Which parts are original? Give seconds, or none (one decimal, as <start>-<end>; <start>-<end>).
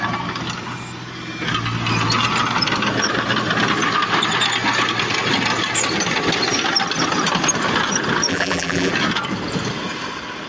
0.0-8.3; 8.9-10.5